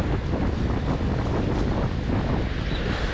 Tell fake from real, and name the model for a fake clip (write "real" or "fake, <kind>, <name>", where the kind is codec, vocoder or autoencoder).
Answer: real